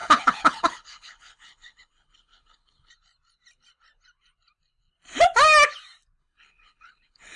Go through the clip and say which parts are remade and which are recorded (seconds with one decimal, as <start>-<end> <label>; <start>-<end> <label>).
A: 0.0-2.9 remade; 2.9-6.2 recorded; 6.2-7.4 remade